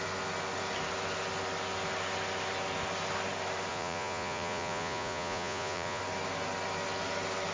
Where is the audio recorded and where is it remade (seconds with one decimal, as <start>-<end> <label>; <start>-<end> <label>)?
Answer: 0.0-3.7 recorded; 3.7-6.0 remade; 6.0-7.5 recorded